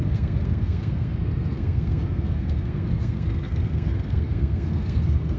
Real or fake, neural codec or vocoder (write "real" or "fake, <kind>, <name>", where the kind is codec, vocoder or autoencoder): fake, codec, SNAC